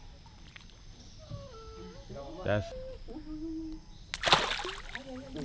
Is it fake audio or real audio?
real